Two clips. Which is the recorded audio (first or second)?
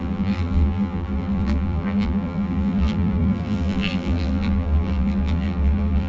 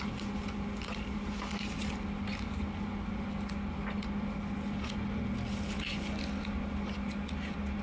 second